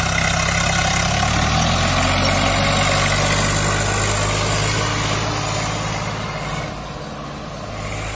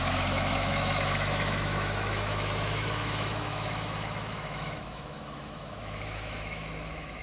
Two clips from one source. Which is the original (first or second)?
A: first